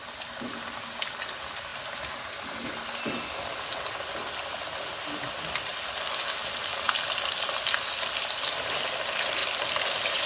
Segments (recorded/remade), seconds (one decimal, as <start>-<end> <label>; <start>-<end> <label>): 0.0-10.3 recorded